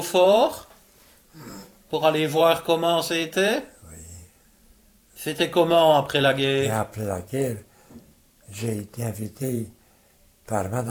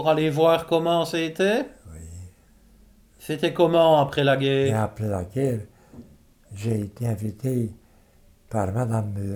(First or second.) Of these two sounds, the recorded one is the second